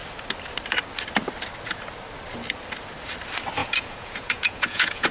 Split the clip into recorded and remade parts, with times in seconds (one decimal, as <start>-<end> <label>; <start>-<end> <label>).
0.0-3.6 recorded; 3.6-5.1 remade